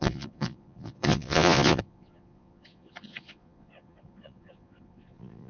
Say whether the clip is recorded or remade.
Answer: remade